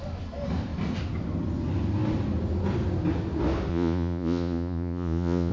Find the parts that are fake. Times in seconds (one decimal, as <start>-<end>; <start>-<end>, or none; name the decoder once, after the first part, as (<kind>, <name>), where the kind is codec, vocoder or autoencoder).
3.7-5.5 (vocoder, Vocos)